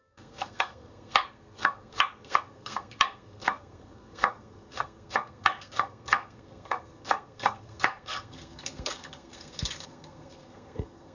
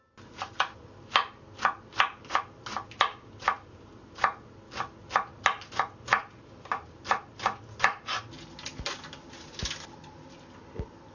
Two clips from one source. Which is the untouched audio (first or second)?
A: second